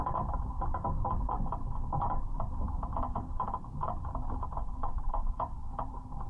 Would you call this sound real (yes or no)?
no